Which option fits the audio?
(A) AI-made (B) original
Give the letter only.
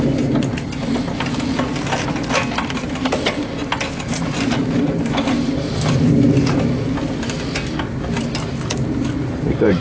B